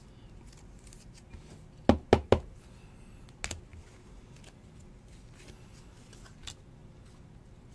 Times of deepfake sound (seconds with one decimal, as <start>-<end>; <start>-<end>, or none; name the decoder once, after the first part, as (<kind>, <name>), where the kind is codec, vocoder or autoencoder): none

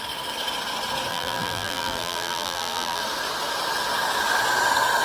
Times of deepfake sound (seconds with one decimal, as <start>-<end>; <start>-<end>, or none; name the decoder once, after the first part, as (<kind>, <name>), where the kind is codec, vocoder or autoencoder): 1.1-3.0 (vocoder, BigVGAN v2)

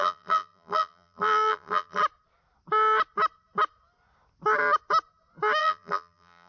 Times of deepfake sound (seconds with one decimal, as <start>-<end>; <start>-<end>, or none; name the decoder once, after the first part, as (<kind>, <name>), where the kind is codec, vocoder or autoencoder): 0.0-2.0 (vocoder, BigVGAN v2); 5.6-6.5

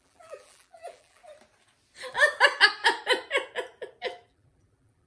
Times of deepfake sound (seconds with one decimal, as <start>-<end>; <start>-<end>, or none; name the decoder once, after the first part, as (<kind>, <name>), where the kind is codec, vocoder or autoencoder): 0.0-1.2 (vocoder, BigVGAN v2); 4.3-5.1

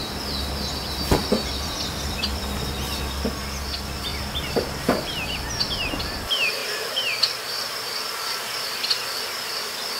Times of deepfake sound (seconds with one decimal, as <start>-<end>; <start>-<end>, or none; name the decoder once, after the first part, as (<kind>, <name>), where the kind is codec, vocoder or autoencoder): 1.2-2.4 (vocoder, BigVGAN v2); 4.1-4.6; 6.6-9.0

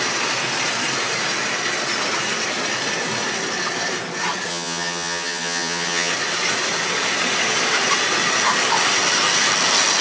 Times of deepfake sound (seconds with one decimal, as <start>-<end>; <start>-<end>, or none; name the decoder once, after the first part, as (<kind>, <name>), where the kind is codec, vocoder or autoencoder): 4.5-6.1 (vocoder, HiFi-GAN)